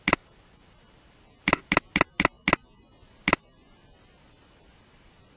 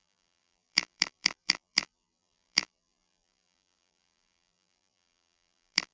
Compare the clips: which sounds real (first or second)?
first